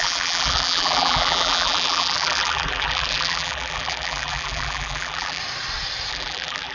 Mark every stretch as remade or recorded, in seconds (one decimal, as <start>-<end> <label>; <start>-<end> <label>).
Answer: 0.0-5.4 remade; 5.4-6.1 recorded; 6.1-6.7 remade